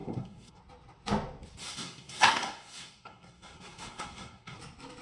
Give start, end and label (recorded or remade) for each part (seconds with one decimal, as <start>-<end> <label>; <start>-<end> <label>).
0.0-0.6 remade; 0.6-1.6 recorded; 1.6-4.6 remade; 4.6-5.0 recorded